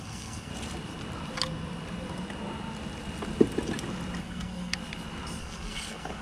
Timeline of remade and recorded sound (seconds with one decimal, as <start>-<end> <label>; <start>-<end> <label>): 0.0-0.5 remade; 0.5-4.2 recorded; 4.2-4.8 remade; 4.8-5.4 recorded; 5.4-6.2 remade